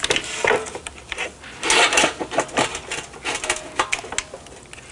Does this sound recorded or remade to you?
recorded